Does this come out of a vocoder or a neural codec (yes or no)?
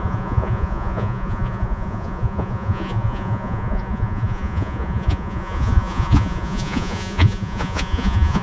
yes